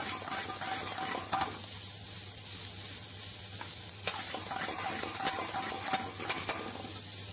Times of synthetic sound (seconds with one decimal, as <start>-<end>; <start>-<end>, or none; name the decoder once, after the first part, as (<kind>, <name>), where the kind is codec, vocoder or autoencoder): 2.0-5.7 (vocoder, BigVGAN v2)